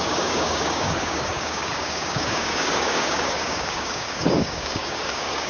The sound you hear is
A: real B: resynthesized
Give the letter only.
B